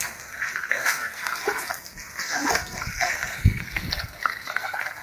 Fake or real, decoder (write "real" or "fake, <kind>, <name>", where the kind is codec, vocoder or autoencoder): fake, codec, SNAC